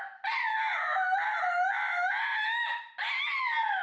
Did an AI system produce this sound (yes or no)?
no